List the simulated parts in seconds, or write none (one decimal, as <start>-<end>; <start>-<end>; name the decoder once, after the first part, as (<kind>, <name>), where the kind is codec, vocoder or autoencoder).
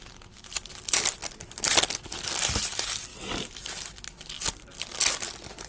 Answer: none